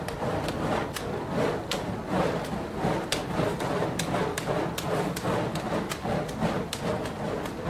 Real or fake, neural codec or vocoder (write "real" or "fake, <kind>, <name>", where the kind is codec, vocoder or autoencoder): real